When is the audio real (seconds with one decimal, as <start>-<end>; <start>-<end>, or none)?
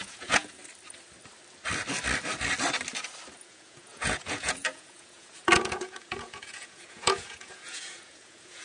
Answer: 0.6-3.4